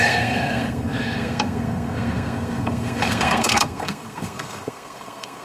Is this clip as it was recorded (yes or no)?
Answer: no